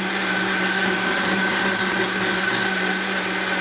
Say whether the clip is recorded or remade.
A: recorded